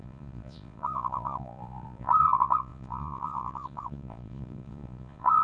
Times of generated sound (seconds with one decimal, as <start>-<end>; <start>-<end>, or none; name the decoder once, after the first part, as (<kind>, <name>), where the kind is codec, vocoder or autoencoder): 0.0-5.4 (vocoder, Vocos)